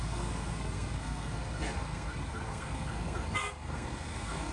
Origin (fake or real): fake